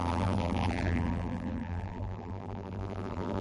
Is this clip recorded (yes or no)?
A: no